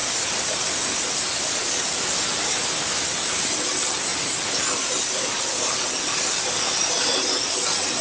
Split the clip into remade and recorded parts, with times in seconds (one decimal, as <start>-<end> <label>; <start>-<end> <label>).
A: 0.0-8.0 recorded